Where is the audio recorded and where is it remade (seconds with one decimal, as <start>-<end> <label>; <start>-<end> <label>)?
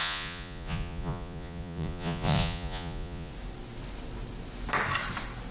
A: 0.0-3.3 remade; 3.3-5.5 recorded